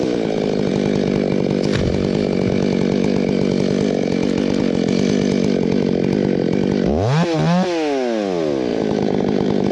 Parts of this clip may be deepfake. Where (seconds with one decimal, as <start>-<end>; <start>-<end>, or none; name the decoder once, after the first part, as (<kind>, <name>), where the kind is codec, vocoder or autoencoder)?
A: 8.7-9.7 (vocoder, BigVGAN v2)